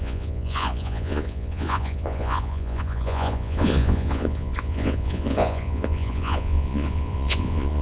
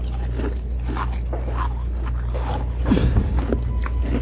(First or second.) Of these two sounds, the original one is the second